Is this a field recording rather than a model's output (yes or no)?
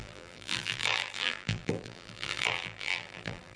no